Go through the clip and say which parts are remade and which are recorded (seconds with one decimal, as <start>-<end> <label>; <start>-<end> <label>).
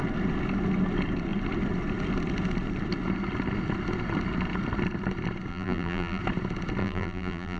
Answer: 0.0-5.5 recorded; 5.5-6.2 remade; 6.2-6.8 recorded; 6.8-7.6 remade